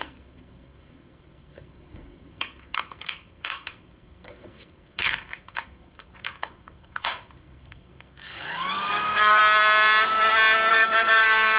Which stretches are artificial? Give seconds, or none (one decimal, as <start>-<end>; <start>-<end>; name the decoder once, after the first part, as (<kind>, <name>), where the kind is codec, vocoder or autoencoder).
0.0-9.4 (codec, SNAC); 10.7-11.6